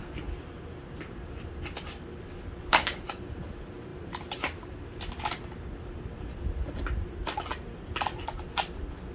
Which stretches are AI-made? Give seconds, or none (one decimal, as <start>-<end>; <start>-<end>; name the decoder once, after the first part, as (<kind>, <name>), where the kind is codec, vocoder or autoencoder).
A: 3.9-4.7 (vocoder, BigVGAN v2)